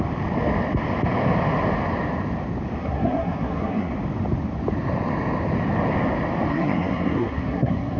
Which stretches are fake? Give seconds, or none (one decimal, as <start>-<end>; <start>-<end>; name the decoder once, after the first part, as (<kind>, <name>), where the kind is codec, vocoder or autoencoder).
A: 2.8-3.9 (codec, SNAC); 6.5-8.0